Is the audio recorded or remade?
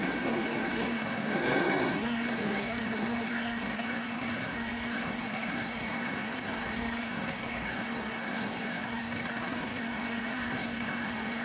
remade